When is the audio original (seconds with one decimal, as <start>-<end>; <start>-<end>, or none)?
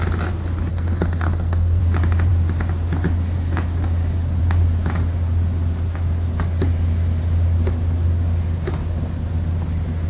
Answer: 0.0-0.7; 1.8-10.1